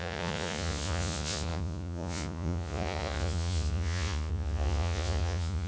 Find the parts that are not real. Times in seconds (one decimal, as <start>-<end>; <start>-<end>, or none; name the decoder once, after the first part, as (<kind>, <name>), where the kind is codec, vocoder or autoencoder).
0.0-5.7 (vocoder, Vocos)